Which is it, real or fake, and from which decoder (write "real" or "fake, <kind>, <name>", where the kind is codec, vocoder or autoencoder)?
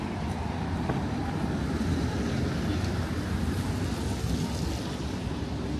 real